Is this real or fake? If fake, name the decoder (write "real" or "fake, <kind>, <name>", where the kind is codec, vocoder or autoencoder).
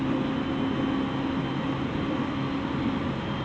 real